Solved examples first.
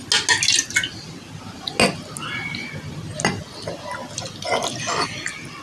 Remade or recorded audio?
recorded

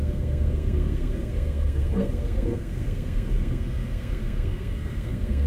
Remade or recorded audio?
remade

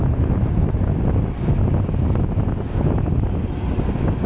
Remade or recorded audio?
recorded